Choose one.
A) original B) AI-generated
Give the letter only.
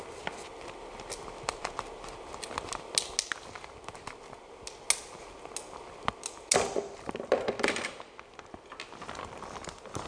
A